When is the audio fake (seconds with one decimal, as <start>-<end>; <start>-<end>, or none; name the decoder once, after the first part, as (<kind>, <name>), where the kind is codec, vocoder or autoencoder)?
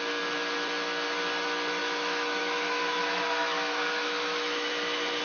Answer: 1.8-5.2 (autoencoder, DAC-VAE)